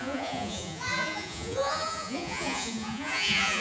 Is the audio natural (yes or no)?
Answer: no